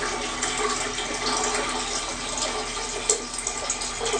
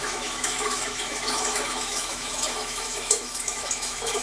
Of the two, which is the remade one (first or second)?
second